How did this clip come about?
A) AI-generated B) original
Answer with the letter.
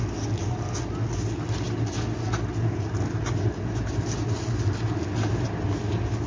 B